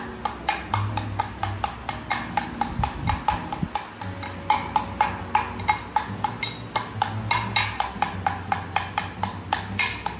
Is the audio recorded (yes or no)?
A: yes